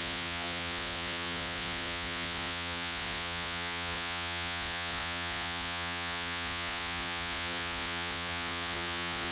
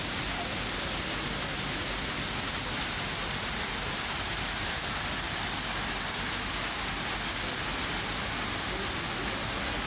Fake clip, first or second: first